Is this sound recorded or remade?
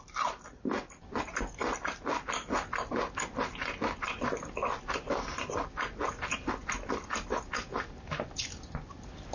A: recorded